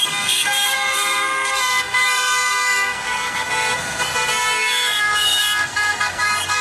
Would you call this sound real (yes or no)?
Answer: no